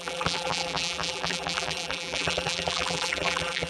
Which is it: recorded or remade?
remade